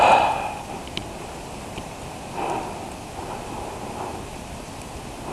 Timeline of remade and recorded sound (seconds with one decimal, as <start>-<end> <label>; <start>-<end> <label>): 0.0-5.3 recorded